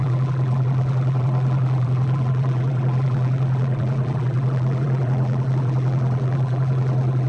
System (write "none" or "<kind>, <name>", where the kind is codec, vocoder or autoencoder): vocoder, BigVGAN v2